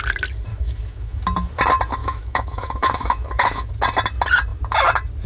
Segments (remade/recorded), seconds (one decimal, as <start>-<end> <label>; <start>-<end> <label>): 0.0-0.5 recorded; 0.5-1.2 remade; 1.2-2.0 recorded; 2.0-3.7 remade; 3.7-5.3 recorded